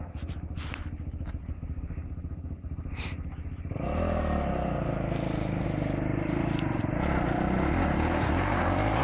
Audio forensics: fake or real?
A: real